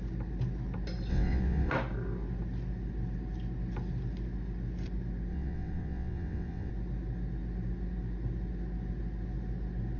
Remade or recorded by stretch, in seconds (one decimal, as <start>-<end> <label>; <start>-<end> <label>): 0.0-1.1 recorded; 1.1-1.7 remade; 1.7-5.3 recorded; 5.3-6.7 remade; 6.7-10.0 recorded